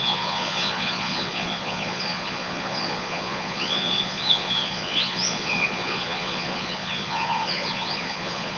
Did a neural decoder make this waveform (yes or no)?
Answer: yes